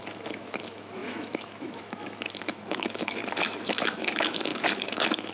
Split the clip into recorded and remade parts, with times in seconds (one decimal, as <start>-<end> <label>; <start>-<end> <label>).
0.0-3.2 remade; 3.2-3.7 recorded; 3.7-5.3 remade